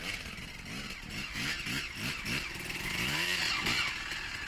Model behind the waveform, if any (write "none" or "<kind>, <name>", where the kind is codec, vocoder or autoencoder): none